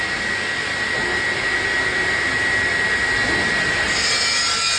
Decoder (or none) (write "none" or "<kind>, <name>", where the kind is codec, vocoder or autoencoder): none